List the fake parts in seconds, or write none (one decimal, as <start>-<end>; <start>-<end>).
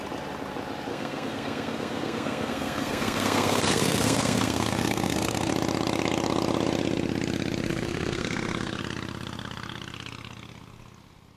0.9-5.5; 7.7-8.8